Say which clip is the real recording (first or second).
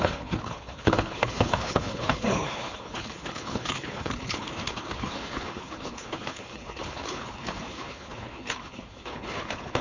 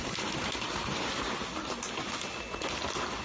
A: second